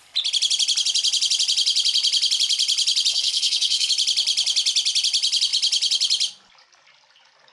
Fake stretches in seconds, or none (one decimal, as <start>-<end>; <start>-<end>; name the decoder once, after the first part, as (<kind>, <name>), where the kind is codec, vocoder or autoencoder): 3.1-3.9 (codec, SNAC)